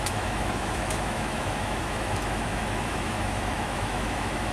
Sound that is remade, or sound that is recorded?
remade